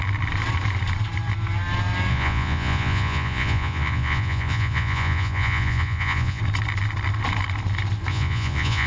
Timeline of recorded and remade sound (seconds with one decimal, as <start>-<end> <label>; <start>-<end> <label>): 0.0-2.1 recorded; 2.1-6.4 remade; 6.4-8.1 recorded; 8.1-8.9 remade